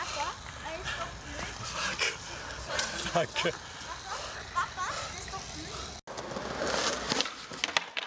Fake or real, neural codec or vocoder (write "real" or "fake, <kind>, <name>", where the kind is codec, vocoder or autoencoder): real